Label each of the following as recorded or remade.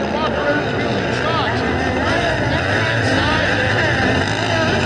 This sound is recorded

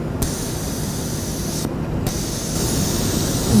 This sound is recorded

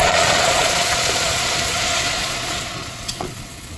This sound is remade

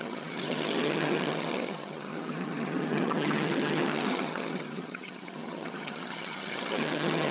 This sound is remade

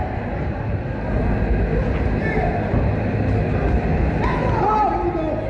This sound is recorded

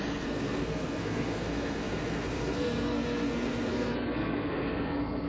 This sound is remade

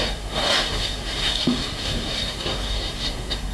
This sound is remade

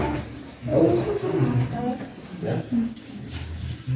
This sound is remade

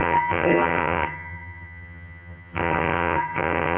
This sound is remade